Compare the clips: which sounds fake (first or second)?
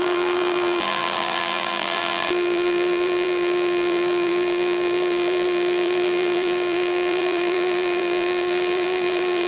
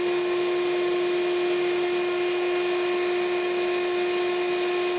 first